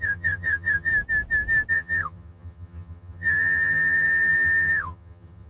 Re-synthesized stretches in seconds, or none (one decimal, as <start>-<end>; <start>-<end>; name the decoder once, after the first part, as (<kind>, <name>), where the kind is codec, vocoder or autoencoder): 0.0-0.9 (vocoder, HiFi-GAN); 1.7-5.5

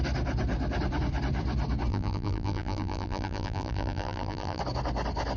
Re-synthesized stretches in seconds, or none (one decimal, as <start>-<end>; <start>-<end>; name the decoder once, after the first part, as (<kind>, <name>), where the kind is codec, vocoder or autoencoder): 1.9-4.6 (vocoder, BigVGAN v2)

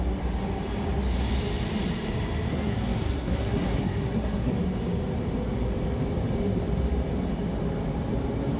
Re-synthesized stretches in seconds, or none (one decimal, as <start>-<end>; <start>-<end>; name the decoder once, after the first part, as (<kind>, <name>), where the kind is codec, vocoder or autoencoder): 2.5-4.5 (codec, SNAC)